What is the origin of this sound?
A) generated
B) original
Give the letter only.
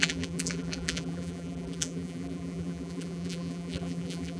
A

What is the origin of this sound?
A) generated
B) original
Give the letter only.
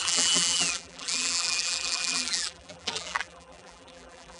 A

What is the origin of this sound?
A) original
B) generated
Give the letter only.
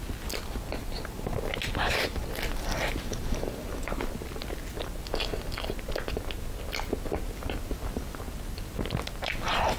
A